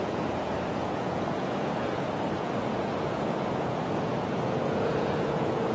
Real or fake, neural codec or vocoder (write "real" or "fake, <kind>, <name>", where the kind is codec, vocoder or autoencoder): fake, vocoder, Vocos